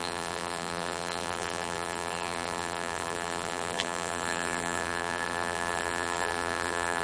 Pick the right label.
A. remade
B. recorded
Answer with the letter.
A